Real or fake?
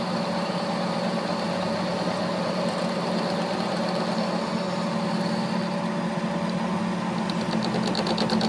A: real